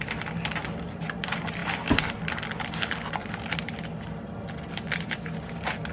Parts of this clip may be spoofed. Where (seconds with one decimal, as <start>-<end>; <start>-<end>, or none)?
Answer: none